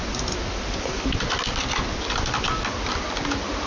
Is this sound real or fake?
real